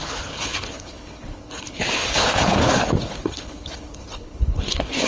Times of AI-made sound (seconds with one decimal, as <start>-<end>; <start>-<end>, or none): 0.0-5.1